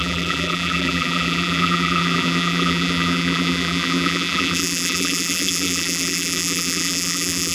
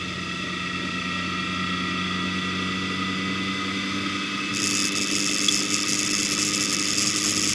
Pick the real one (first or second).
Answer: second